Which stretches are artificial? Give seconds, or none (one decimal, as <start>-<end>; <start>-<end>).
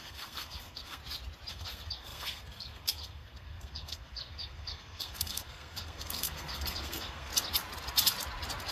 0.0-1.0; 1.5-7.3